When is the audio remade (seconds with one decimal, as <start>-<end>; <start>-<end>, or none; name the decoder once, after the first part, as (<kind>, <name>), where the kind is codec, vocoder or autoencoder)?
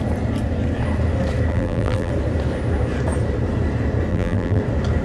1.5-2.1 (vocoder, BigVGAN v2); 4.1-4.6